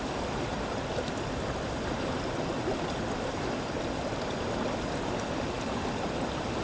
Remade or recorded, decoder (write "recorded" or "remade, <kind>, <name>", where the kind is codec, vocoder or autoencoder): remade, vocoder, BigVGAN v2